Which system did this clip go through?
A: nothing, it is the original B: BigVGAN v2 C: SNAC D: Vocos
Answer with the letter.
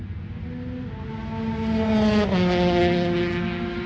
A